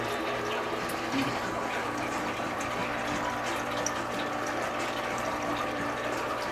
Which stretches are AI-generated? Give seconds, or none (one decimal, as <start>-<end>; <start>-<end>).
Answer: 0.0-2.8; 5.0-6.5